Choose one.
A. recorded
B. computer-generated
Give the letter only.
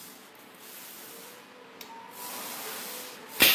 A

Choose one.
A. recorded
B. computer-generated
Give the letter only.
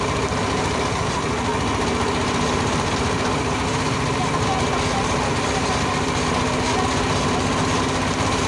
A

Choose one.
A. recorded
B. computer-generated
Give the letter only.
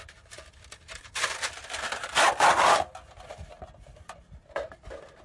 A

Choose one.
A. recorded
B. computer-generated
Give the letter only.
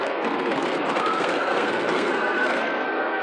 B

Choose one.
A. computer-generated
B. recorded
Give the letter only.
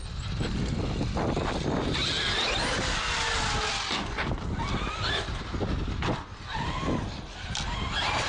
B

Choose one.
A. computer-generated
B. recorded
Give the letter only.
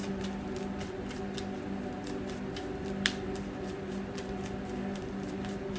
B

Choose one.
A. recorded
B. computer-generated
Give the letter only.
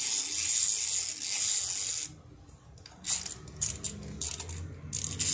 A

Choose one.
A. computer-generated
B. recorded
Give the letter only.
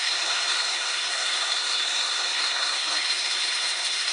A